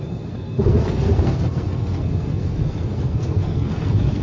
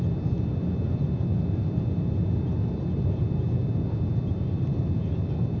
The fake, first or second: first